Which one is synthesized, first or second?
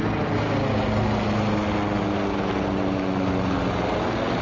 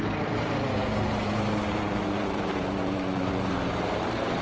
second